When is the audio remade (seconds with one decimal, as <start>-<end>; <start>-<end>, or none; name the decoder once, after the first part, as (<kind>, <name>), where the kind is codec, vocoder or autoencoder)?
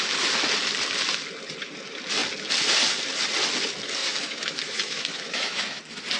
4.0-5.8 (autoencoder, DAC-VAE)